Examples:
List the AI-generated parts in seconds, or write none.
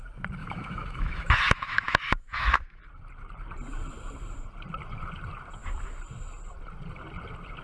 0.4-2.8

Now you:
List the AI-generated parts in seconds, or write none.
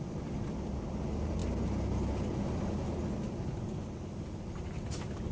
none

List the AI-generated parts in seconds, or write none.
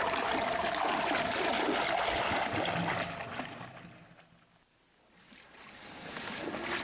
none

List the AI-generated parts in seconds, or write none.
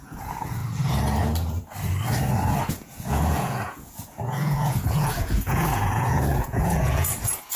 0.0-0.6; 2.7-7.6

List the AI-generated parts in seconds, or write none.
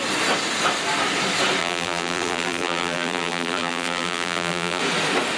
1.6-4.8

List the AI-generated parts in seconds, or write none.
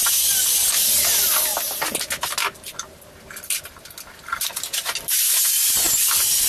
none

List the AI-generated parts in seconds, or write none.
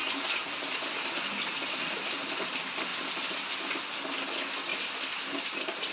none